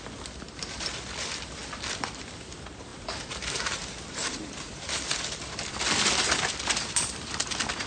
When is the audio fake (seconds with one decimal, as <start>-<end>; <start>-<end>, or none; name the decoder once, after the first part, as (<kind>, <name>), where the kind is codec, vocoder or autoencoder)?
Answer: 2.9-5.1 (vocoder, BigVGAN v2)

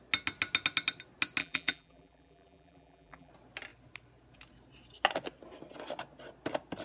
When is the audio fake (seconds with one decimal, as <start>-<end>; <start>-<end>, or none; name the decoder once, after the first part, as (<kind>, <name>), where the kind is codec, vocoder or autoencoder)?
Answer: 1.4-3.3 (vocoder, BigVGAN v2)